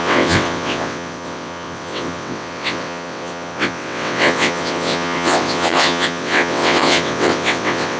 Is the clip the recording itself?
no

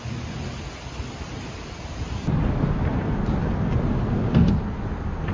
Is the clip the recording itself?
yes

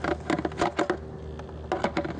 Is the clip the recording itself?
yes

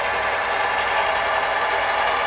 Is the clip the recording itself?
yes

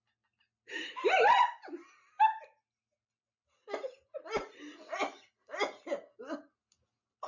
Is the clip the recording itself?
yes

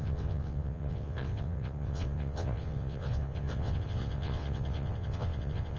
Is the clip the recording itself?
no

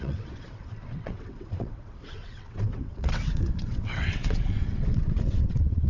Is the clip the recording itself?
no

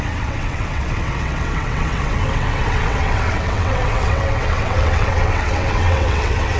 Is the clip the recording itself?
no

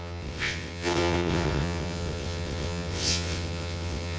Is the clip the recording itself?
no